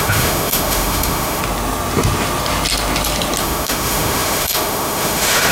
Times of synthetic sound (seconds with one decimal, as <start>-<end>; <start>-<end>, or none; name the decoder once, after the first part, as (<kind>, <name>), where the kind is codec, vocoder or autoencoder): 0.0-1.4 (autoencoder, DAC-VAE); 3.4-5.5